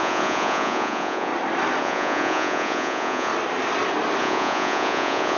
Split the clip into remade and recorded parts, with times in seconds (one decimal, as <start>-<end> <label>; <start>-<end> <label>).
0.0-1.3 remade; 1.3-1.8 recorded; 1.8-3.3 remade; 3.3-4.2 recorded; 4.2-5.4 remade